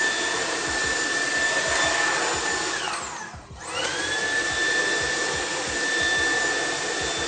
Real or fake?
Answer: real